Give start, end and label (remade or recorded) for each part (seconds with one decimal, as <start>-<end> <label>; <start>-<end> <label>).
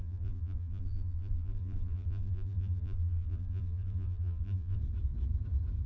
0.0-4.8 remade; 4.8-5.9 recorded